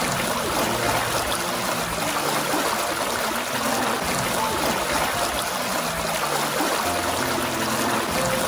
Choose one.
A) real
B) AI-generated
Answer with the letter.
A